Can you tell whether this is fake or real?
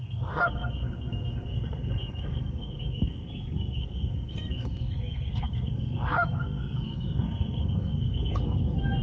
fake